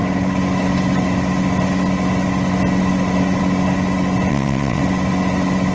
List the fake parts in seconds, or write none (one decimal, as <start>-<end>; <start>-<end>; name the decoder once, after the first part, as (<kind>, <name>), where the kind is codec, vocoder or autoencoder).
4.3-4.8 (vocoder, WaveNeXt)